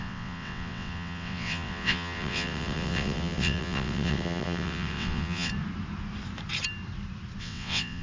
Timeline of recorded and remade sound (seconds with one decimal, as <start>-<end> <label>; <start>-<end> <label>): 0.0-5.5 remade; 5.5-7.4 recorded; 7.4-8.0 remade